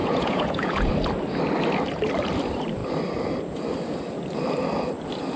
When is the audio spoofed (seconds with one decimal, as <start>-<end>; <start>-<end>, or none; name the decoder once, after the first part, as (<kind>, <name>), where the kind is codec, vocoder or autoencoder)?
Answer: 0.0-0.9 (vocoder, Vocos)

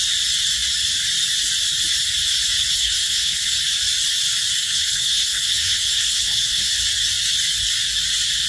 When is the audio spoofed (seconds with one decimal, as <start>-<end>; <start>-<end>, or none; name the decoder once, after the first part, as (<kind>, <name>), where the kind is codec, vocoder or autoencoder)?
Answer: 2.7-3.5 (codec, HILCodec); 4.6-6.7

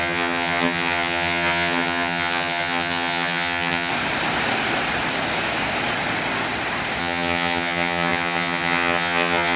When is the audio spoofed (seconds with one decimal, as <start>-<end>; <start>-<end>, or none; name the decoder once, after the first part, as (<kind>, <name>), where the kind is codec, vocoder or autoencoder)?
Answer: 0.0-3.9 (vocoder, HiFi-GAN); 7.0-9.6

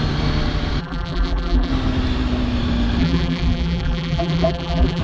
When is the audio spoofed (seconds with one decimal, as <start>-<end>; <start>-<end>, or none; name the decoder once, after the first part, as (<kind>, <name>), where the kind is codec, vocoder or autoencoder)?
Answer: 0.8-1.7 (vocoder, BigVGAN v2); 3.0-5.0

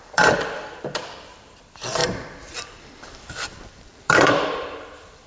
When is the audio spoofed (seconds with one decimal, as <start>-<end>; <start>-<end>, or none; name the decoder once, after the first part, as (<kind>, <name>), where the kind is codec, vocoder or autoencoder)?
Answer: 0.0-5.3 (vocoder, BigVGAN v2)